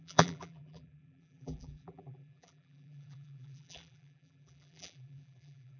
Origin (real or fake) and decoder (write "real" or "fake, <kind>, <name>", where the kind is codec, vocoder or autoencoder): fake, vocoder, BigVGAN v2